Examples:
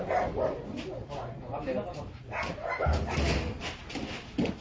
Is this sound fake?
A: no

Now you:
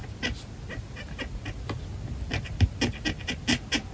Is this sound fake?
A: no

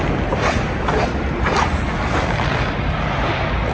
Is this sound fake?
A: no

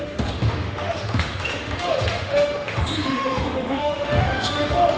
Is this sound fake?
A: yes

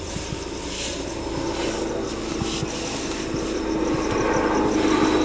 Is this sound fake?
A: no